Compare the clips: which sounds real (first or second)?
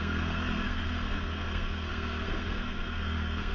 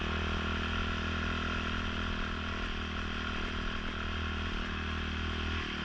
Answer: second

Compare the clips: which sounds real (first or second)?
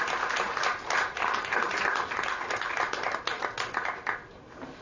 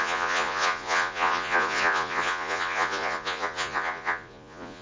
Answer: first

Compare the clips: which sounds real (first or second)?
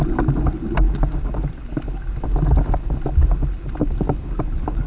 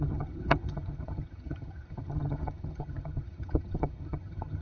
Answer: first